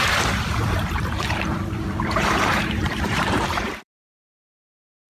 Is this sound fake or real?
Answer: fake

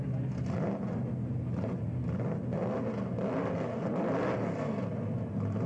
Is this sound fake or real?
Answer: real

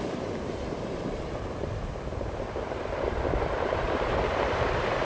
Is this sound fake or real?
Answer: fake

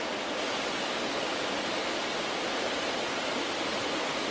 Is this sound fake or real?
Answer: real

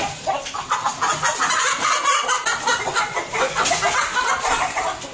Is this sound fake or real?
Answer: real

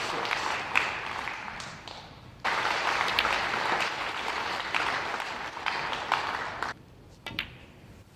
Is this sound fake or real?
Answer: fake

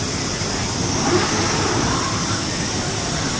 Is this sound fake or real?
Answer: real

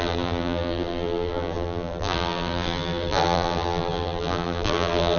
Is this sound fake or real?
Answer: fake